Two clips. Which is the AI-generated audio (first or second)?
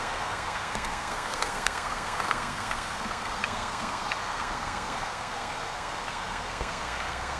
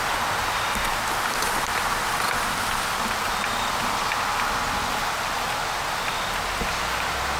first